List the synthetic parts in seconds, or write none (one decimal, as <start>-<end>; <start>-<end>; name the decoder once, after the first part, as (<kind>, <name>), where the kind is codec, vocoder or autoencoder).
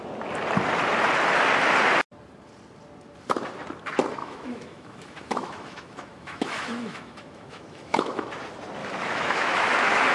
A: 4.2-8.3 (autoencoder, DAC-VAE); 8.8-10.1